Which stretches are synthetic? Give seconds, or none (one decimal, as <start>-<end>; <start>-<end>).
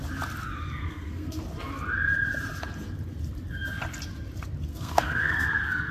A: 0.8-1.4; 4.7-5.9